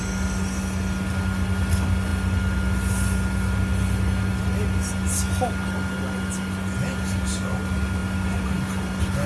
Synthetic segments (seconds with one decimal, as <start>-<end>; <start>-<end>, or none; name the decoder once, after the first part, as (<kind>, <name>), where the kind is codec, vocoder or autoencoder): none